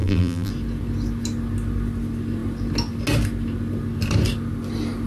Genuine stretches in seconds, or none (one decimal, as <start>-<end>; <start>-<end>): 0.5-5.1